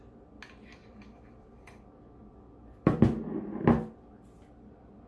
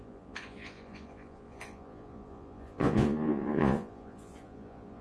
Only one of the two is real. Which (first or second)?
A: first